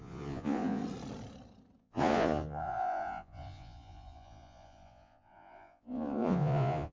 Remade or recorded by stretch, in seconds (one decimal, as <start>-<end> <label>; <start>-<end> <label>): 0.0-0.8 remade; 0.8-1.8 recorded; 1.8-6.9 remade